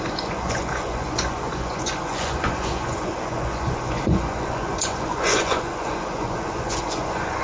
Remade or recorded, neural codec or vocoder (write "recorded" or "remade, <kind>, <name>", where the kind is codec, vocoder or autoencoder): remade, vocoder, Vocos